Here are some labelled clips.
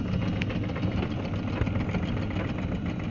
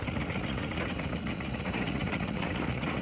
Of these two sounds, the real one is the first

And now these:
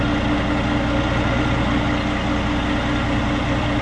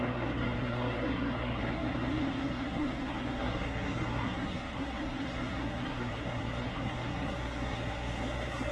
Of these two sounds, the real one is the first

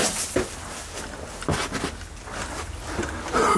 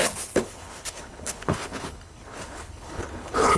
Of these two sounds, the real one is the first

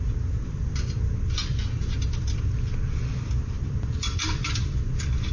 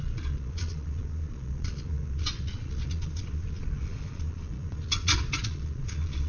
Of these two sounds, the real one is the first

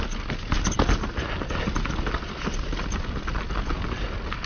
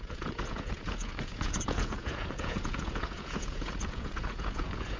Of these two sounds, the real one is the first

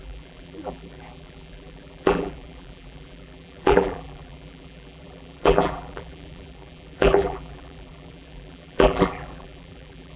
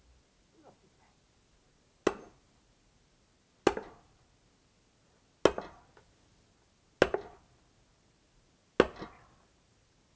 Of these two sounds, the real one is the second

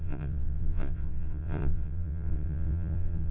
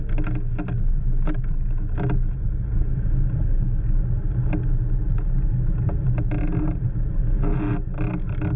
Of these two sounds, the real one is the second